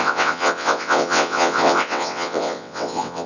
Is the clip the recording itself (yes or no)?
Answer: no